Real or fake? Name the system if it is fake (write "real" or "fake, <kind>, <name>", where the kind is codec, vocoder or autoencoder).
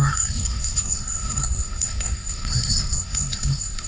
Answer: fake, codec, SNAC